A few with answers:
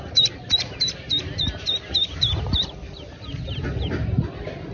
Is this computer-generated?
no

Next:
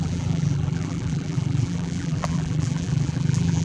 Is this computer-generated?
yes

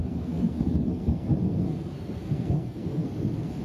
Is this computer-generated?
yes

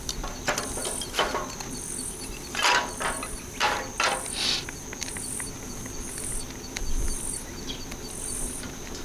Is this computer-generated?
no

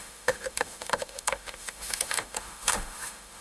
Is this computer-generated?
yes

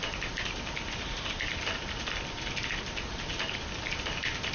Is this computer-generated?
no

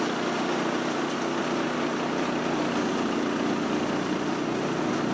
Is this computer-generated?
no